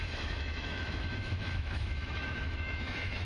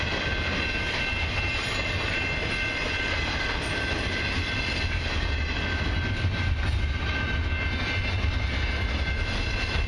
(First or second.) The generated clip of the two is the first